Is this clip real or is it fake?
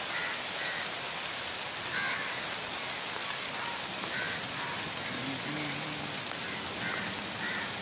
real